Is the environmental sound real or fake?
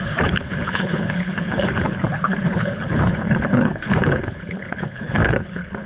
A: fake